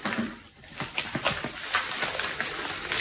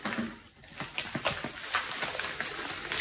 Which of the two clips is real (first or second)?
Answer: second